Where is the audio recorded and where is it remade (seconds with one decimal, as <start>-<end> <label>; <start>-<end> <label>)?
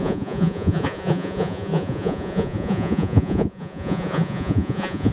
0.0-5.1 remade